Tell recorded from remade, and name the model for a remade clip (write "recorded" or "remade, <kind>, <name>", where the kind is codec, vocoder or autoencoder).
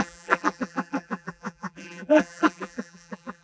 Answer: remade, vocoder, BigVGAN v2